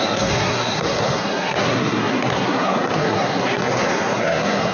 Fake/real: fake